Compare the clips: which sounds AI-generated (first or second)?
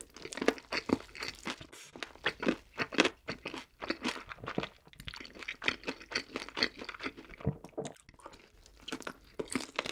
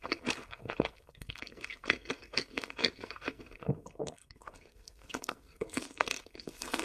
second